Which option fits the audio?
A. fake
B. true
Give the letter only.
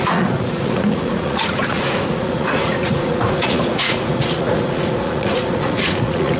A